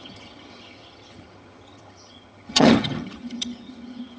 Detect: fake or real fake